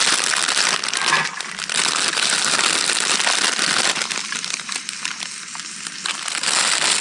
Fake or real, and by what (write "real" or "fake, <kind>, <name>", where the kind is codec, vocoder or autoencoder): real